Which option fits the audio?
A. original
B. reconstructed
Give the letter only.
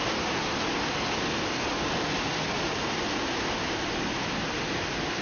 A